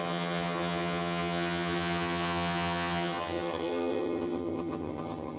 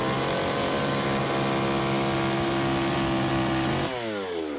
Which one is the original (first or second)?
second